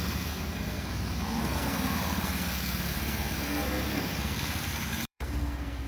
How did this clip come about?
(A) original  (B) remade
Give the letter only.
B